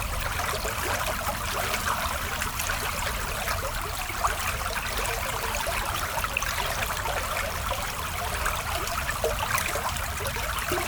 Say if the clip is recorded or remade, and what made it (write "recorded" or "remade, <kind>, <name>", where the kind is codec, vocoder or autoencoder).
remade, vocoder, BigVGAN v2